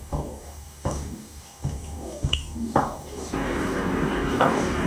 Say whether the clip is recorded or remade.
remade